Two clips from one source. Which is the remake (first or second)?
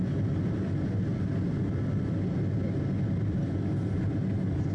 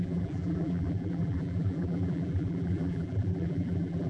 second